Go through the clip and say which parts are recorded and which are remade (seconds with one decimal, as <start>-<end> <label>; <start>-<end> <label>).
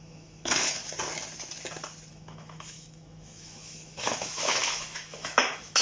0.0-0.8 remade; 0.8-2.1 recorded; 2.1-5.8 remade